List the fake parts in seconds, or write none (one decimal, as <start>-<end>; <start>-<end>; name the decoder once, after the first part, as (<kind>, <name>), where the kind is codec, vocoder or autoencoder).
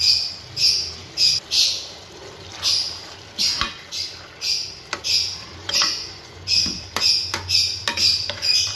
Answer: 5.6-6.5 (vocoder, Vocos)